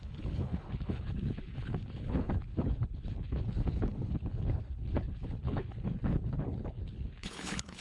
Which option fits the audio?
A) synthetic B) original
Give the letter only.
A